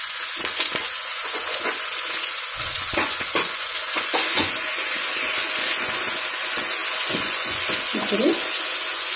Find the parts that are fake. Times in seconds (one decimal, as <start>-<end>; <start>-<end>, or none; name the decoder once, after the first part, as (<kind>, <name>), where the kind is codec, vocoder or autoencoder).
0.0-9.2 (vocoder, Vocos)